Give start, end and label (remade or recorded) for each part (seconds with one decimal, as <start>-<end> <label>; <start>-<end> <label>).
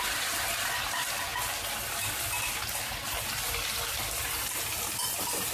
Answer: 0.0-5.5 recorded